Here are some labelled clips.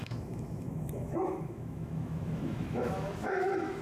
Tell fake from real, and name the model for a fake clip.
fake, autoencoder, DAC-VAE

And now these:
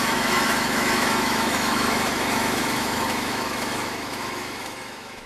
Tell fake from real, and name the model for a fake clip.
fake, autoencoder, DAC-VAE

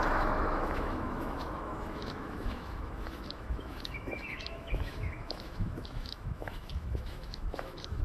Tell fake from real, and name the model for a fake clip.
fake, autoencoder, DAC-VAE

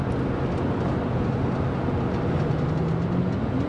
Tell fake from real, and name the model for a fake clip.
real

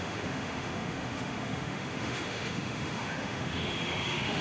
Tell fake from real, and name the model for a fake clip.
fake, autoencoder, DAC-VAE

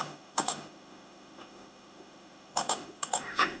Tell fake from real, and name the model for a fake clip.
fake, autoencoder, DAC-VAE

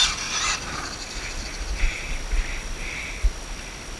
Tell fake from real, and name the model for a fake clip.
real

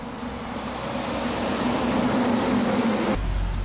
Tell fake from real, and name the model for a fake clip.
real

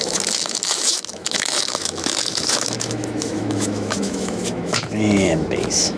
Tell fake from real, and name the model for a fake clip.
fake, autoencoder, DAC-VAE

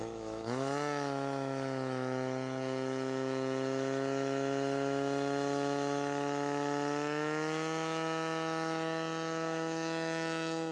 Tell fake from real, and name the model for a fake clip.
fake, autoencoder, DAC-VAE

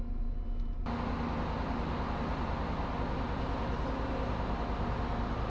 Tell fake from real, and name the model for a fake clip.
real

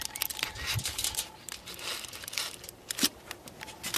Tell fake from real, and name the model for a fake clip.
real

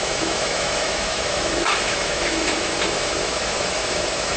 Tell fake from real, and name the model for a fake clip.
fake, autoencoder, DAC-VAE